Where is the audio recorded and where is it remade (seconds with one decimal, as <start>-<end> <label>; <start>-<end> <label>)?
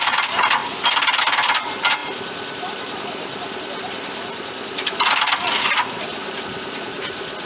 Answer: 0.0-0.6 recorded; 0.6-1.2 remade; 1.2-2.0 recorded; 2.0-6.4 remade; 6.4-7.4 recorded